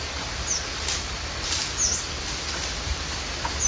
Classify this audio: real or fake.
real